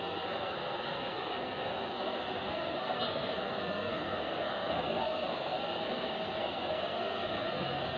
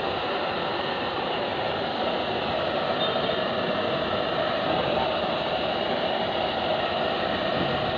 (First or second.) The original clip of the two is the second